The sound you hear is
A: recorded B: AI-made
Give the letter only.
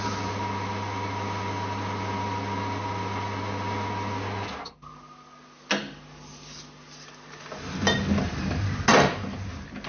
A